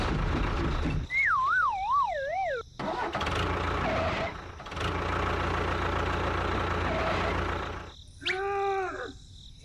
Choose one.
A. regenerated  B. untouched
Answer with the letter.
B